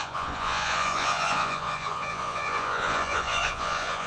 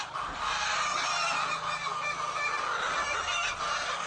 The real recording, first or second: second